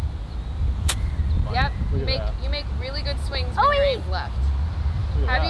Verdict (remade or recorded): recorded